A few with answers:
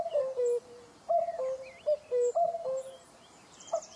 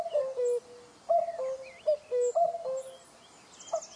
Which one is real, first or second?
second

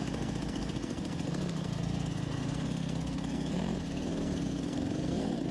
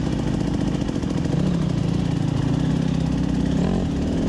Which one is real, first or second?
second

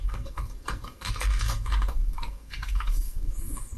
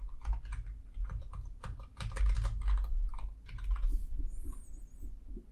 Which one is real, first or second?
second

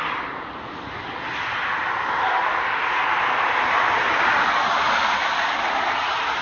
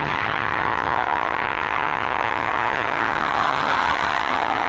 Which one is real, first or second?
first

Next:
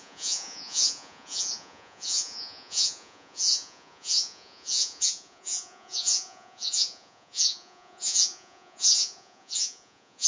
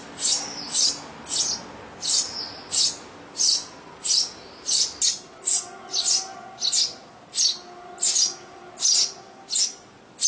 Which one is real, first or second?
second